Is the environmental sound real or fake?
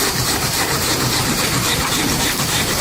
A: fake